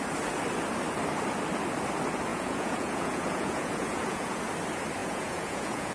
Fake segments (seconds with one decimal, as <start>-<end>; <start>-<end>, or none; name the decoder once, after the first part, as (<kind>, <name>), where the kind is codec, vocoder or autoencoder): 2.3-4.4 (vocoder, Vocos); 5.0-5.9